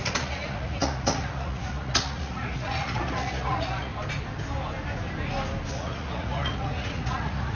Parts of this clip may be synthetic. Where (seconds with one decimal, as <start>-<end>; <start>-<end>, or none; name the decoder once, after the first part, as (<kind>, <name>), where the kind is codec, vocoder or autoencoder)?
0.0-3.9 (vocoder, Vocos); 5.7-7.5